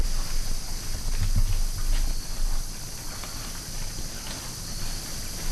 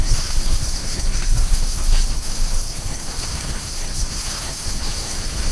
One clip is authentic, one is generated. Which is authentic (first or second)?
first